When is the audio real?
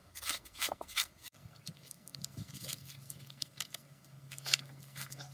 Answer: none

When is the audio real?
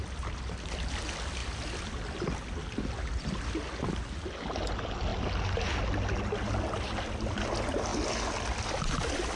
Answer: 0.0-9.4